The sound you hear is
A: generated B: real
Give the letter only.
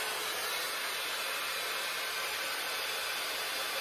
B